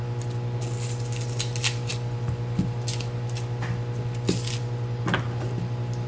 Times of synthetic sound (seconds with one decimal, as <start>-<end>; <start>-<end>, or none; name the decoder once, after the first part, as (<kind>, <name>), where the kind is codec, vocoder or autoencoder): none